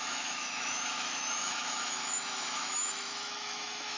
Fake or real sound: fake